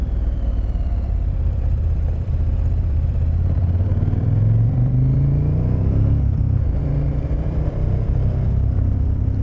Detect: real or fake fake